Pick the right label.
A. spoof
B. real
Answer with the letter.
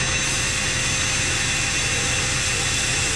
B